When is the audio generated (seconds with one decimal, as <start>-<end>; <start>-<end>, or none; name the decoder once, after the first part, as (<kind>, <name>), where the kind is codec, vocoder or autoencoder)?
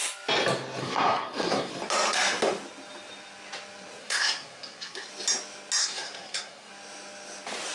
0.8-1.7 (codec, SNAC); 4.0-5.1; 5.8-6.7